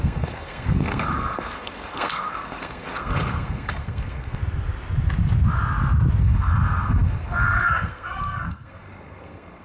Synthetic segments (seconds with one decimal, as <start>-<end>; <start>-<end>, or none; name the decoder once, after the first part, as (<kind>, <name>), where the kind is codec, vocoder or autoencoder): 0.0-4.4 (codec, SNAC); 6.2-9.6